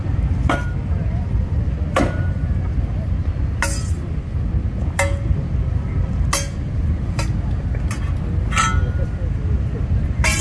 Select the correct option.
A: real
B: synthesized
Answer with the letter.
A